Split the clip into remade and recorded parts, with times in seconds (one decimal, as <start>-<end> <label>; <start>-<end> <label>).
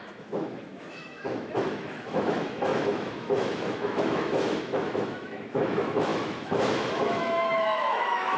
0.0-8.4 remade